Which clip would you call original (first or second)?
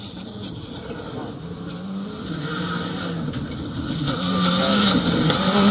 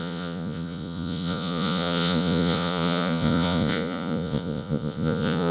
first